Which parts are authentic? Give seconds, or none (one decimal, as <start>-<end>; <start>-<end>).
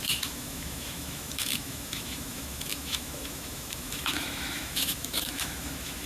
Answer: none